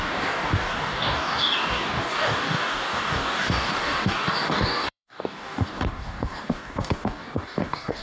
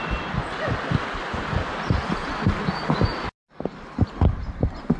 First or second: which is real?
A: second